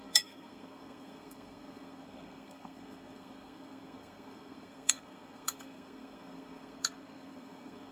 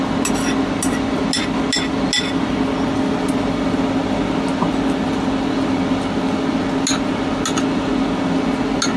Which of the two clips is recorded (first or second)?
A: second